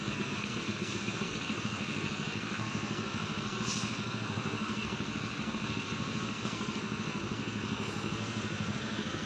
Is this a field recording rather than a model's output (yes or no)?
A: no